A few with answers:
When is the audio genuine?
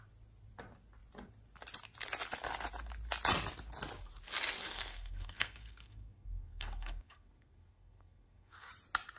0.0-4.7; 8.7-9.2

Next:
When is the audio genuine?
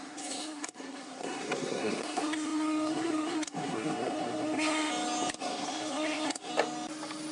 4.9-5.4; 6.5-7.3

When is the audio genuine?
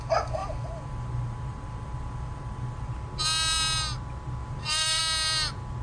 0.0-0.4; 2.9-4.4; 5.0-5.8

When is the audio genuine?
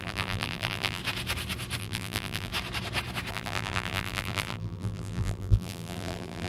1.0-1.8; 2.5-3.3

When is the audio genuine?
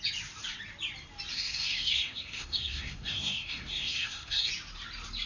0.0-1.3; 4.5-5.3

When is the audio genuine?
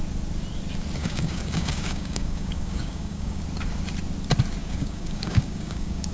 0.0-1.0; 3.4-4.6